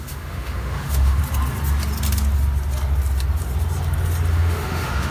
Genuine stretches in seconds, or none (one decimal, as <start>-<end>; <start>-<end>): 1.2-4.3